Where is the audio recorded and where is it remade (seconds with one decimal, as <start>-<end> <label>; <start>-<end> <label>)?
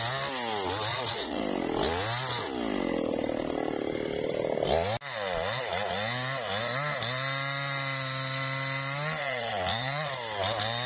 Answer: 0.0-0.9 recorded; 0.9-1.4 remade; 1.4-9.2 recorded; 9.2-10.1 remade; 10.1-10.9 recorded